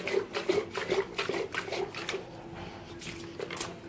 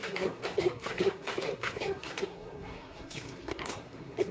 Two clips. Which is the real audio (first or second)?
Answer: first